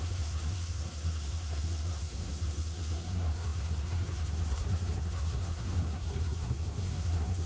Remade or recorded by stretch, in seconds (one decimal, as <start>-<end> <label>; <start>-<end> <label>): 0.0-7.5 remade